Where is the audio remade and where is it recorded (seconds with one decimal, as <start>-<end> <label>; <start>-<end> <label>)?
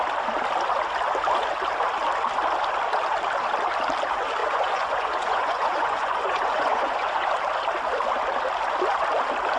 0.0-4.4 recorded; 4.4-7.3 remade; 7.3-9.6 recorded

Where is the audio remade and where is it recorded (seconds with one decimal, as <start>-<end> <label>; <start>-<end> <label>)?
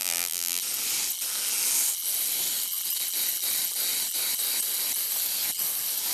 0.0-0.6 remade; 0.6-6.1 recorded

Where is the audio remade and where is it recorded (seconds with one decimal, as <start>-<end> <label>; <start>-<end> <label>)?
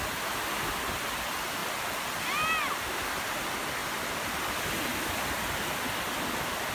0.0-6.7 recorded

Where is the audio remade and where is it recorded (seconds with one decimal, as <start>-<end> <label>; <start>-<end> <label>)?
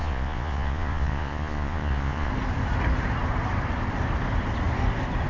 0.0-2.3 remade; 2.3-5.3 recorded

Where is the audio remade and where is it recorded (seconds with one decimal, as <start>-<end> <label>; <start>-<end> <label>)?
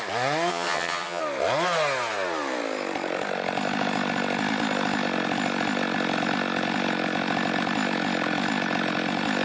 0.0-0.5 recorded; 0.5-1.2 remade; 1.2-9.4 recorded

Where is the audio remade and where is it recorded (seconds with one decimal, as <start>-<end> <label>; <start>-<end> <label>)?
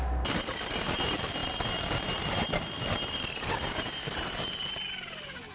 0.0-5.5 recorded